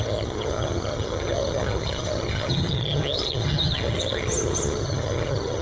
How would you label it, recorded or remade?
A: remade